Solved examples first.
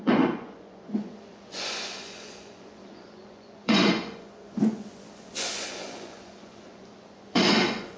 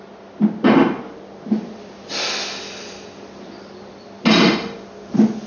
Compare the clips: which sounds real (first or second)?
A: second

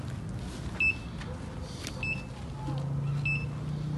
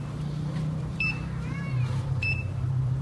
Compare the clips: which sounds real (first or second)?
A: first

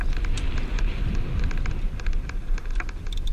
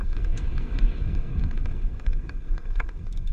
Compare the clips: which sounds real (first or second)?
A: first